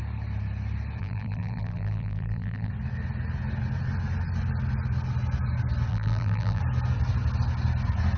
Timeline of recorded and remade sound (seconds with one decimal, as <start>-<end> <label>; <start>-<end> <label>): 0.0-1.0 recorded; 1.0-2.7 remade; 2.7-5.9 recorded; 5.9-6.6 remade; 6.6-8.2 recorded